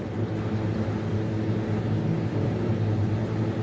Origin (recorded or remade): recorded